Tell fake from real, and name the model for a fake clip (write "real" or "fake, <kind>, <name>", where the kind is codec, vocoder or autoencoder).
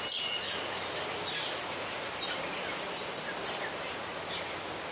real